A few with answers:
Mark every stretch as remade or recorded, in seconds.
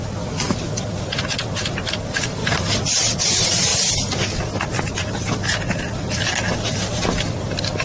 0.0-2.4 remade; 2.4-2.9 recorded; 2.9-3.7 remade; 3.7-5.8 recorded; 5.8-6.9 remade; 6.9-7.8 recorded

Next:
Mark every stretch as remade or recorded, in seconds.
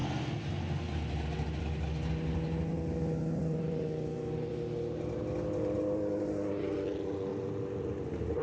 0.0-2.7 recorded; 2.7-3.8 remade; 3.8-7.3 recorded; 7.3-8.4 remade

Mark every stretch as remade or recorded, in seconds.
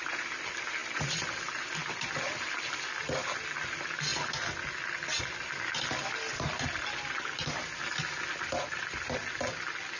0.0-10.0 recorded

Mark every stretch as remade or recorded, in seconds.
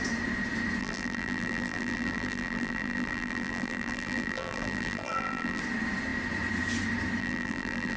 0.0-0.8 recorded; 0.8-5.6 remade; 5.6-7.2 recorded; 7.2-8.0 remade